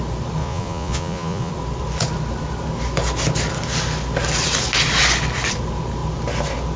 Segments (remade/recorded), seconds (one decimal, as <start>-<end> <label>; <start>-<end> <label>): 0.0-0.4 recorded; 0.4-1.5 remade; 1.5-6.8 recorded